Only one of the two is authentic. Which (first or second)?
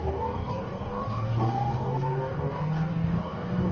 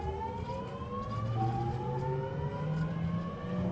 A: second